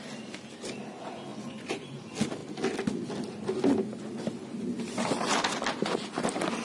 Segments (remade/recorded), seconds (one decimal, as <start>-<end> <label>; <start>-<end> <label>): 0.0-1.3 recorded; 1.3-2.0 remade; 2.0-6.6 recorded